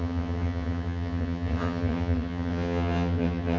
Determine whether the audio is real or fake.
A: fake